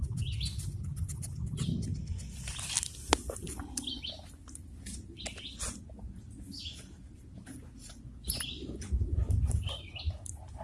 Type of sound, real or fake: real